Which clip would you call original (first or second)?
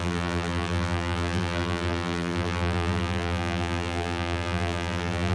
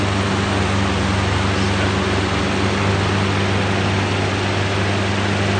second